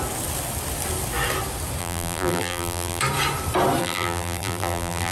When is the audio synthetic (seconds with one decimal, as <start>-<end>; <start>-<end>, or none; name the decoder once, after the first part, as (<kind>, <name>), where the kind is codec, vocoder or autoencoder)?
1.8-3.0 (vocoder, BigVGAN v2); 3.8-5.1